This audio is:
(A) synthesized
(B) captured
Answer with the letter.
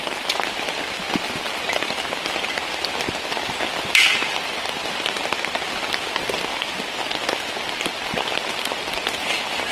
B